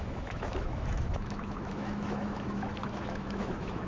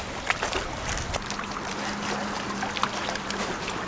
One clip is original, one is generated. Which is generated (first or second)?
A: first